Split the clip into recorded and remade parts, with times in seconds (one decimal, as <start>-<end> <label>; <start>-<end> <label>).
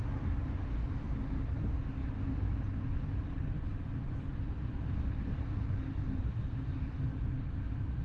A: 0.0-8.0 recorded